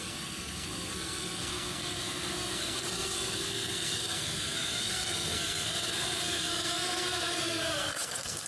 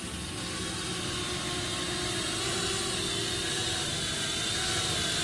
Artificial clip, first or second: first